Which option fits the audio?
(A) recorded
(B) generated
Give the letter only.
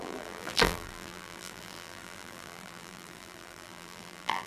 B